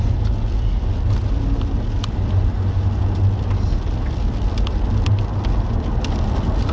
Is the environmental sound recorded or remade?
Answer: recorded